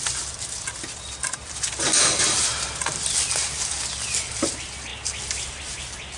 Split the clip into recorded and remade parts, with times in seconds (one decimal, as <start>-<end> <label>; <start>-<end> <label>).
0.0-6.2 recorded